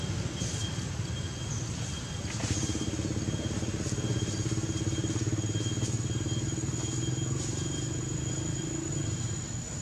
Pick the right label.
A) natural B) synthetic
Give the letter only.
A